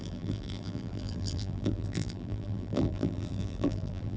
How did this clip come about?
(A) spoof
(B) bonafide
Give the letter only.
A